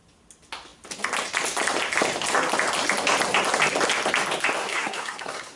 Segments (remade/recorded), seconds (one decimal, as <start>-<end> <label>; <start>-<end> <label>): 0.0-4.6 recorded; 4.6-5.6 remade